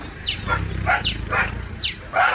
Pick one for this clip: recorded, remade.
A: recorded